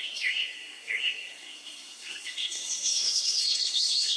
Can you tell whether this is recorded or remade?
remade